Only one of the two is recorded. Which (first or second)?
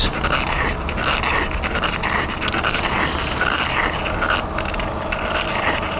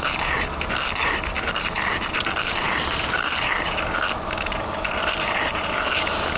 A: first